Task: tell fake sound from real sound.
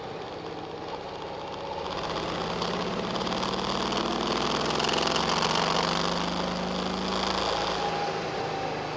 real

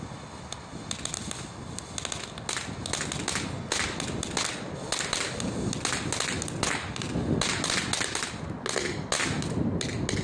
real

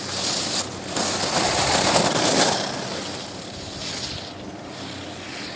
real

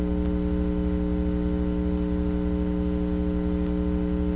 real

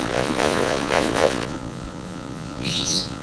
fake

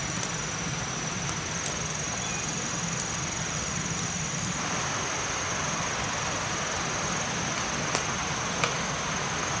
real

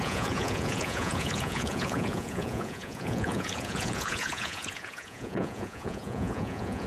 fake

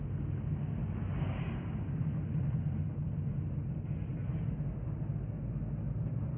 real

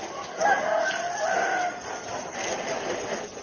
real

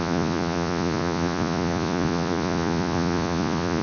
fake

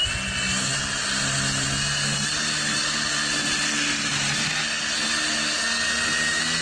real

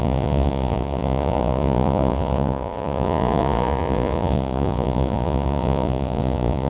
fake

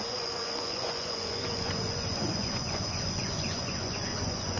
fake